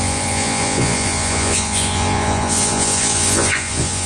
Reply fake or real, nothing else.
fake